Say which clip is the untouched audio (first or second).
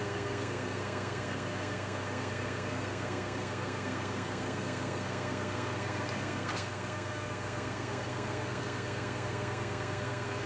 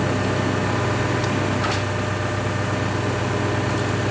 second